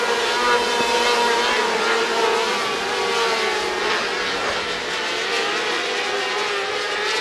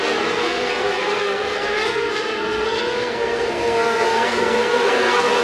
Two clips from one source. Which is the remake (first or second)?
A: second